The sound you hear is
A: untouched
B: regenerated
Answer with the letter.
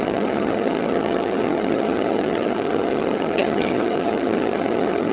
B